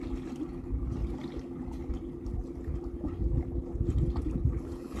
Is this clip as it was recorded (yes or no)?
yes